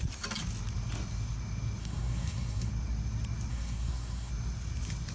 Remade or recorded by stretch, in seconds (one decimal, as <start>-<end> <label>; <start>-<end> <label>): 0.0-1.8 recorded; 1.8-2.7 remade; 2.7-3.5 recorded; 3.5-4.3 remade; 4.3-5.1 recorded